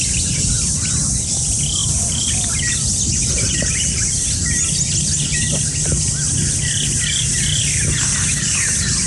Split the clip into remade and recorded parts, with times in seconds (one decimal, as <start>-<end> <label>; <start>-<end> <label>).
0.0-3.2 recorded; 3.2-3.7 remade; 3.7-9.1 recorded

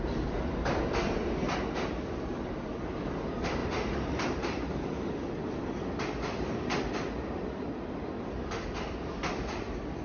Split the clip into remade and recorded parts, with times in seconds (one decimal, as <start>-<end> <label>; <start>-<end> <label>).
0.0-3.6 recorded; 3.6-4.7 remade; 4.7-10.0 recorded

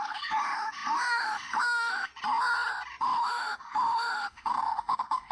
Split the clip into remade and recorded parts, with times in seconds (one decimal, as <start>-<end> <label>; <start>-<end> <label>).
0.0-2.1 remade; 2.1-3.0 recorded; 3.0-5.3 remade